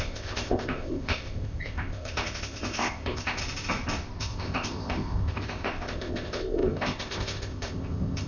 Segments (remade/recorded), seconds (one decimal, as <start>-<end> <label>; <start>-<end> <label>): 0.0-3.4 remade; 3.4-4.2 recorded; 4.2-8.3 remade